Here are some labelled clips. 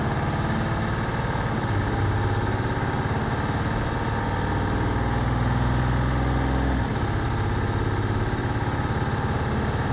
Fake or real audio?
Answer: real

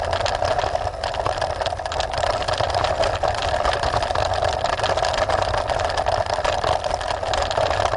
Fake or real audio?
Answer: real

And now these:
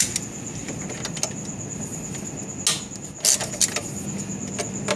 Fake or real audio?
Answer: real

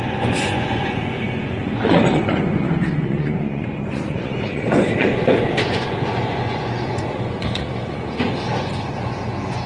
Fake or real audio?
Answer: fake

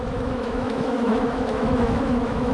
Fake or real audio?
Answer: fake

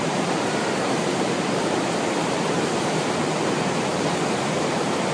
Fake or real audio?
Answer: fake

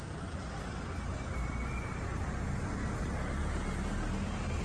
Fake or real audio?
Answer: real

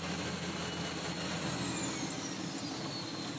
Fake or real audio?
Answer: real